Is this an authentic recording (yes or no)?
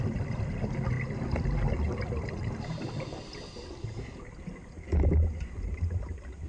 yes